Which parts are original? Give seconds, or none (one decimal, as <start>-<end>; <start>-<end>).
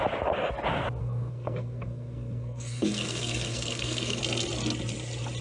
0.0-1.0; 4.2-5.4